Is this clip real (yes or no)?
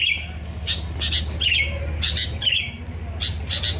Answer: yes